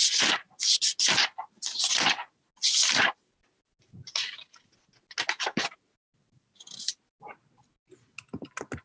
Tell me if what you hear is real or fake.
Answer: real